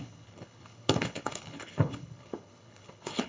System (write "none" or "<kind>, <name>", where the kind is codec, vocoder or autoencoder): codec, HILCodec